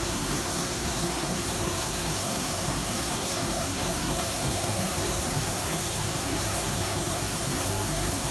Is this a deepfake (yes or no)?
yes